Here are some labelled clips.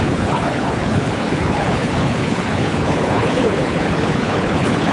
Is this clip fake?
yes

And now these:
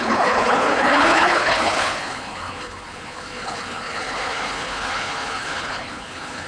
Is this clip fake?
yes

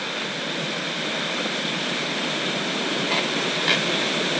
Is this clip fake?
no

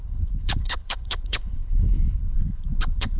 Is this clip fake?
yes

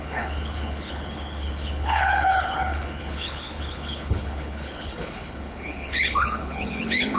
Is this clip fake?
yes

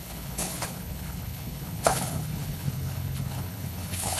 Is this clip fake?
yes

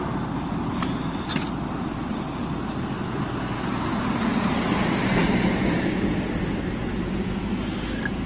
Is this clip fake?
no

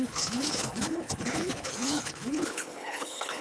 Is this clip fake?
yes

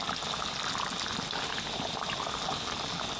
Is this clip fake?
no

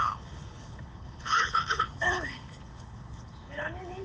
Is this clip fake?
yes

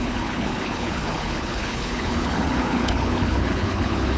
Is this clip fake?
yes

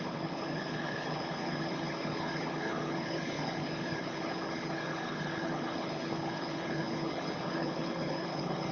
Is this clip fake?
yes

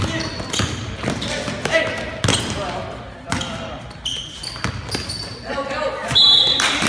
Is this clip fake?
no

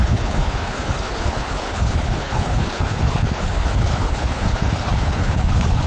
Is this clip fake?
yes